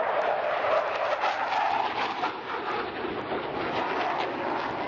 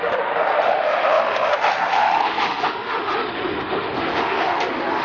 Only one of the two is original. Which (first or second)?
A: first